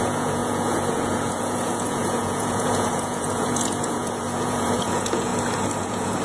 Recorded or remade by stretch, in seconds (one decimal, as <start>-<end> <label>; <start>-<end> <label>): 0.0-5.3 remade; 5.3-5.8 recorded; 5.8-6.2 remade